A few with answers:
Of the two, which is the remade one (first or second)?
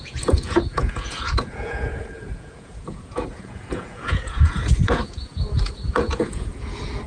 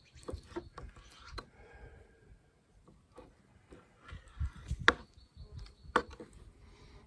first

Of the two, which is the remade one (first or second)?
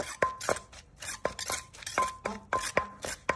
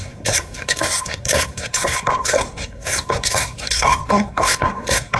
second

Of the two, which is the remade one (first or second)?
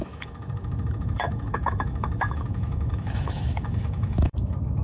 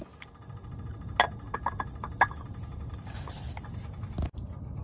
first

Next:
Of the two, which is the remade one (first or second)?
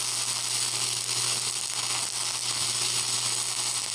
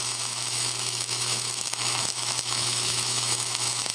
second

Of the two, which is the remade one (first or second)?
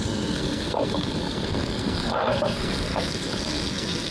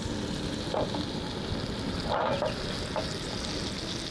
first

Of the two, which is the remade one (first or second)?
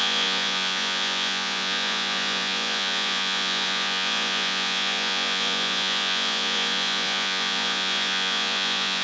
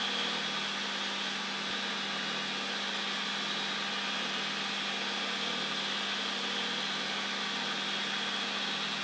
first